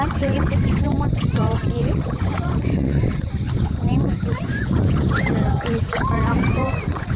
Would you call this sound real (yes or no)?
no